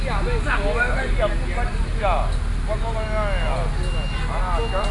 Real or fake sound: real